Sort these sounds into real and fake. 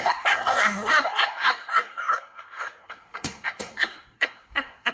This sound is fake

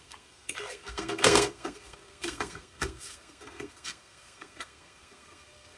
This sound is fake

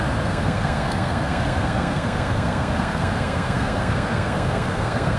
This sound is fake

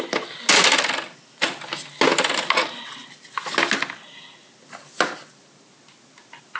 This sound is real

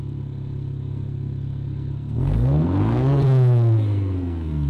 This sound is fake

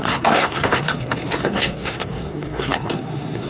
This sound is fake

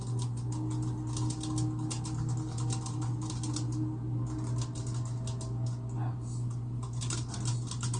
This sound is real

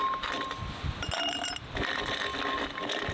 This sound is real